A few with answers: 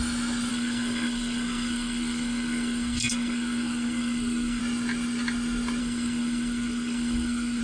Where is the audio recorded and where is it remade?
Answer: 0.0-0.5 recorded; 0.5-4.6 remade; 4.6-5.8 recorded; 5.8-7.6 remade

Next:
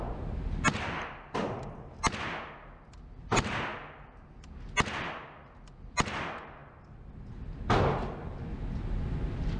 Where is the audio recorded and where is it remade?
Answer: 0.0-9.6 recorded

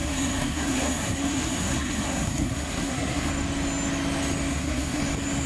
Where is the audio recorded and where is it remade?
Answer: 0.0-3.3 remade; 3.3-4.5 recorded; 4.5-5.0 remade; 5.0-5.5 recorded

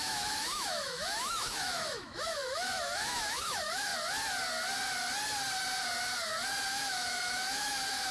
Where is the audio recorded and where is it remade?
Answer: 0.0-3.9 remade; 3.9-6.7 recorded; 6.7-8.1 remade

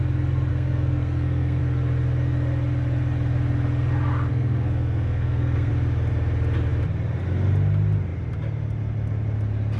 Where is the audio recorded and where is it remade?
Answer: 0.0-0.5 recorded; 0.5-1.6 remade; 1.6-4.3 recorded; 4.3-5.7 remade; 5.7-9.8 recorded

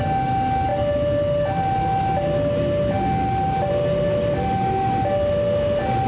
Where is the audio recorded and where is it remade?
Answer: 0.0-6.1 recorded

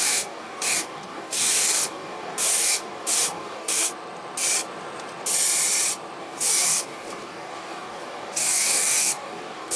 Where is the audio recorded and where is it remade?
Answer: 0.0-3.9 remade; 3.9-6.2 recorded; 6.2-9.8 remade